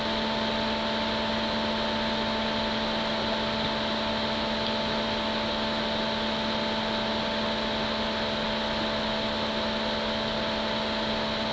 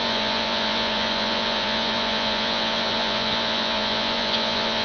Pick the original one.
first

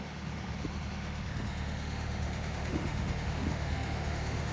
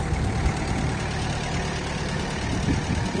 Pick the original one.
second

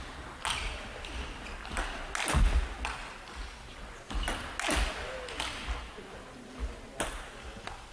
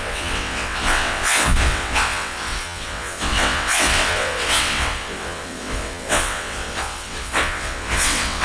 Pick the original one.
first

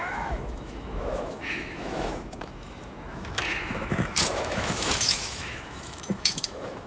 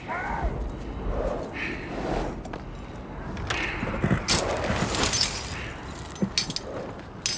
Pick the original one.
second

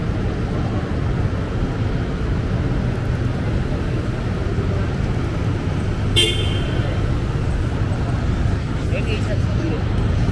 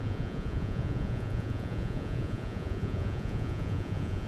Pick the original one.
first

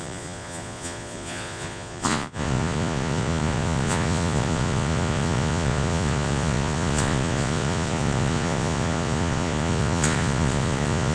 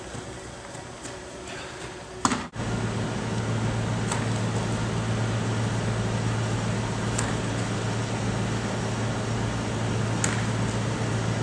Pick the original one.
second